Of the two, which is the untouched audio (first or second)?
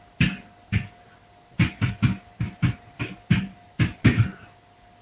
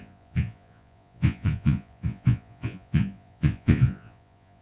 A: first